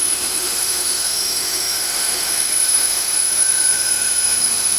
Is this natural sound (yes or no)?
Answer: no